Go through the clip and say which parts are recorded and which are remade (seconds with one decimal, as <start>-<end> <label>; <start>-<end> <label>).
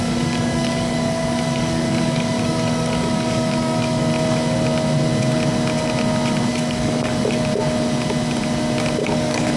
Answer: 0.0-4.1 remade; 4.1-6.5 recorded; 6.5-7.5 remade; 7.5-9.0 recorded; 9.0-9.6 remade